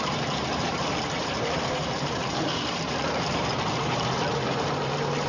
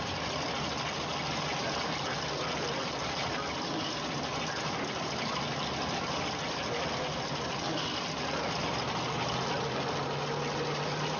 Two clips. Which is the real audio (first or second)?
second